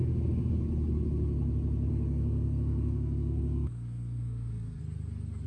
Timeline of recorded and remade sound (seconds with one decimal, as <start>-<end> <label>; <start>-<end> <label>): 0.0-1.9 recorded; 1.9-4.8 remade; 4.8-5.5 recorded